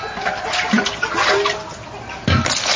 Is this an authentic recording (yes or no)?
yes